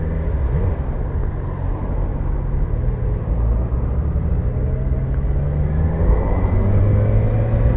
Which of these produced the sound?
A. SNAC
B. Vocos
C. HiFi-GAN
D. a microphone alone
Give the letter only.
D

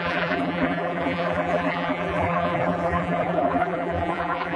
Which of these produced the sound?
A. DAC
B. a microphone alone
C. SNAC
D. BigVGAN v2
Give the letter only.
D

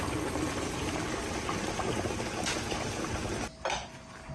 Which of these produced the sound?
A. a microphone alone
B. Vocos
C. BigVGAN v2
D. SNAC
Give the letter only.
A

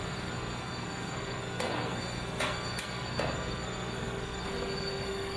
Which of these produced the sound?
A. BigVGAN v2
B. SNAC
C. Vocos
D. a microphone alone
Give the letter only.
B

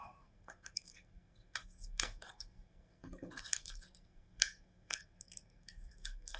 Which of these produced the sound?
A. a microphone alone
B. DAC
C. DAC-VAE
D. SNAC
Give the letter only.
D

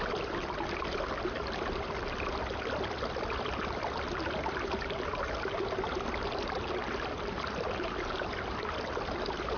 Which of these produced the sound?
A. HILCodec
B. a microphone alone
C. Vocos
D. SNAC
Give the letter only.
B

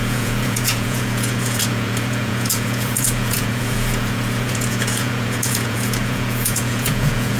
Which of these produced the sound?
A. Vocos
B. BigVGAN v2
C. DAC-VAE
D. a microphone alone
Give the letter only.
A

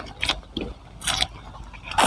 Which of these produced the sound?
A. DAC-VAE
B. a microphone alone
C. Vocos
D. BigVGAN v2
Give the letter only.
D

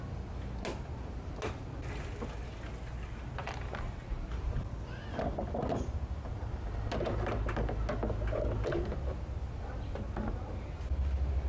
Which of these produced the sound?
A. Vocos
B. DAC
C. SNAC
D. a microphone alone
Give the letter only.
D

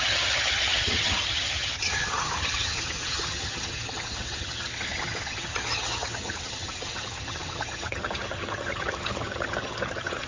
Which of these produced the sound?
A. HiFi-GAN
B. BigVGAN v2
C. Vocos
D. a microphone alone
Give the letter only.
A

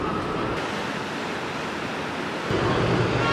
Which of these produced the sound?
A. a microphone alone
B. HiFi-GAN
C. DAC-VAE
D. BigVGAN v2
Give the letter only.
A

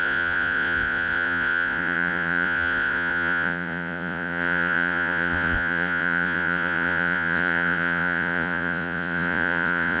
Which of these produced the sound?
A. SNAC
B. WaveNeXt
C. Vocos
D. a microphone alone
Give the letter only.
C